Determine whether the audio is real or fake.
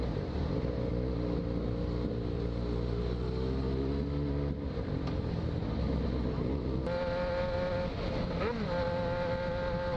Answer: real